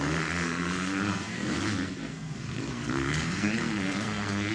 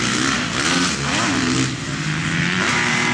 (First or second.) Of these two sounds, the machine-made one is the first